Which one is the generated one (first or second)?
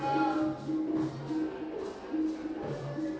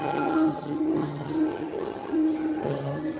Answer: second